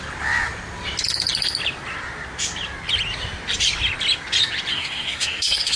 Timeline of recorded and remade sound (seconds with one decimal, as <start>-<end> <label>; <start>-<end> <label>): 0.0-4.7 recorded; 4.7-5.8 remade